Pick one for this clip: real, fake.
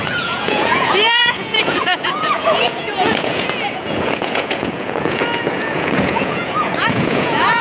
fake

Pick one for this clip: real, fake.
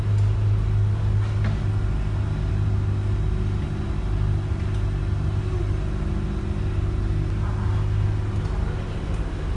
real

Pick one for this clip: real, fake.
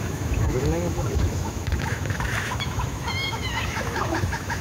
fake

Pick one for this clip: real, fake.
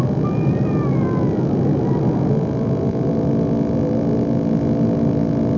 real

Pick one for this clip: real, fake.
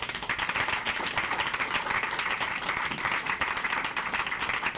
real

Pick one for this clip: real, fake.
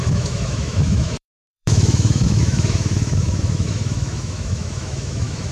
fake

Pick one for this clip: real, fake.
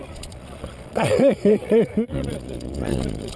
fake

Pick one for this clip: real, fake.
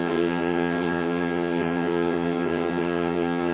fake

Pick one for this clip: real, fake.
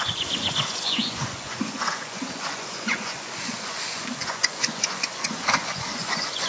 fake